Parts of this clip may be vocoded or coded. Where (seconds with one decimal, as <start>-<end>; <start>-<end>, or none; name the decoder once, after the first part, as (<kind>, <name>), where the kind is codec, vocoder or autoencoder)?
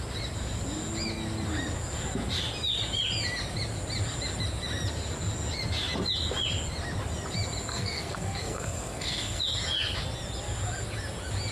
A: 7.7-9.4 (codec, SNAC)